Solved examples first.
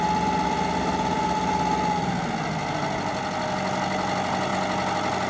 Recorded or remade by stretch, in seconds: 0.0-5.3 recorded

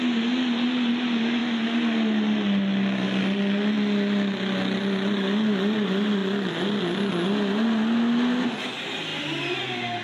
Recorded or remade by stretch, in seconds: 0.0-10.0 recorded